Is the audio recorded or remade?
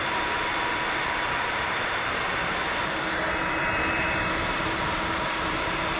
remade